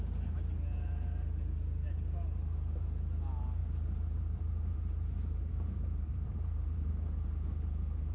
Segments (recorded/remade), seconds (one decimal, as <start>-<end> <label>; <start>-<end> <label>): 0.0-3.6 recorded; 3.6-6.9 remade; 6.9-8.1 recorded